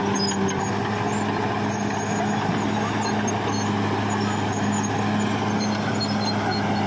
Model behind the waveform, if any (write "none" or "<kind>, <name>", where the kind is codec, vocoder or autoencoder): none